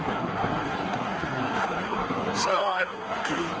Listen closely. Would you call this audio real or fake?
fake